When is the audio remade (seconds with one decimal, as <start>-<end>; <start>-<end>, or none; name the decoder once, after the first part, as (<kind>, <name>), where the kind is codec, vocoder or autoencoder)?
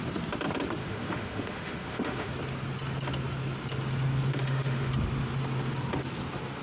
0.8-2.3 (autoencoder, DAC-VAE); 4.3-4.9